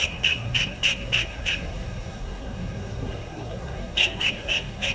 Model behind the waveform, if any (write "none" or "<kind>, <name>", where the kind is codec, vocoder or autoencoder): codec, SNAC